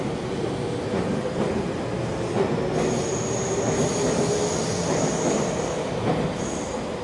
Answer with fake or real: real